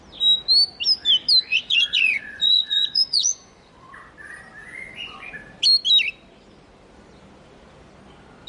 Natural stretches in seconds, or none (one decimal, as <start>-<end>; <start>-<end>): 0.0-1.5; 3.9-4.6; 5.3-8.5